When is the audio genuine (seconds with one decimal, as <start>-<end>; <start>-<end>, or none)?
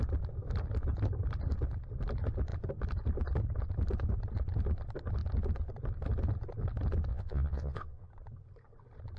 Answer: 0.0-7.1; 8.1-9.2